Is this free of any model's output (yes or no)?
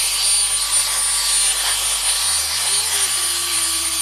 yes